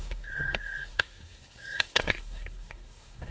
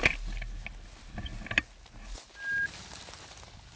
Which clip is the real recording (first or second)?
second